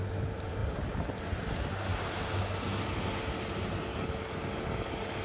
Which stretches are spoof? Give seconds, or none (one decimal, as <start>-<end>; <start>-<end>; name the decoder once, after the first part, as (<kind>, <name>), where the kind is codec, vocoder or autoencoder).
3.9-5.2 (codec, DAC)